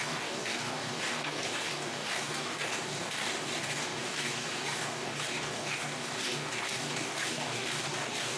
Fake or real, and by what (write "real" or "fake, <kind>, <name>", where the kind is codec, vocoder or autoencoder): fake, codec, DAC